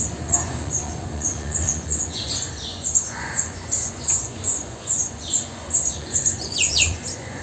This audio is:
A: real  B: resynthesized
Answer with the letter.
B